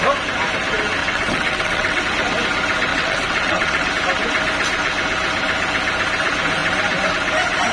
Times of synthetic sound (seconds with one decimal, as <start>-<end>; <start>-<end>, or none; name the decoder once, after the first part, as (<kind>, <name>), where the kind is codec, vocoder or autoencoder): 1.0-2.0 (vocoder, WaveNeXt); 2.9-3.9